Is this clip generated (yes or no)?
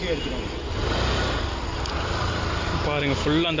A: no